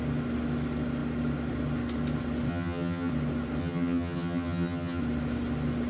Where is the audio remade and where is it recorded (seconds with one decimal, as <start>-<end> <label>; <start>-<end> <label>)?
0.0-2.5 recorded; 2.5-3.1 remade; 3.1-3.6 recorded; 3.6-5.0 remade; 5.0-5.9 recorded